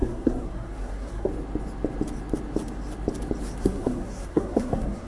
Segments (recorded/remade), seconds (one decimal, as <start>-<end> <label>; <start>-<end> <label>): 0.0-1.3 remade; 1.3-3.6 recorded; 3.6-5.1 remade